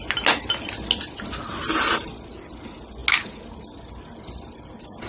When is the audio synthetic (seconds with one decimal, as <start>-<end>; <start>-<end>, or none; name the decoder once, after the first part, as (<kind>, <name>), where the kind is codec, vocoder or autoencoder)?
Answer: none